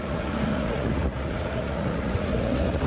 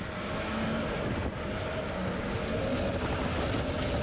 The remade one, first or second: first